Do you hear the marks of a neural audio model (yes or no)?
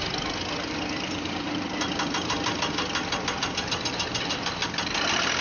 no